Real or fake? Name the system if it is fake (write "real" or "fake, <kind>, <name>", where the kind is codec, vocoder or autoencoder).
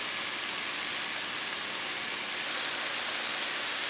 real